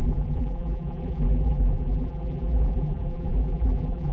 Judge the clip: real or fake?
fake